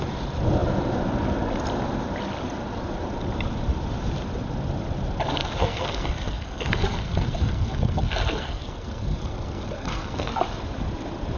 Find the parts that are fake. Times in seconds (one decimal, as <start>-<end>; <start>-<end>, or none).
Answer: 5.4-10.4